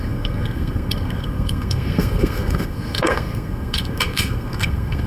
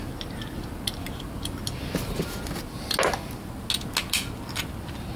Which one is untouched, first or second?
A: second